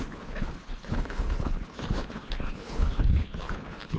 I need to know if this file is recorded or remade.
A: remade